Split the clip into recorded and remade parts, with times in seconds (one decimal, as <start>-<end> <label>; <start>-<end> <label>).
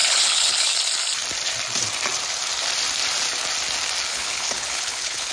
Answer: 0.0-0.7 remade; 0.7-4.1 recorded; 4.1-5.3 remade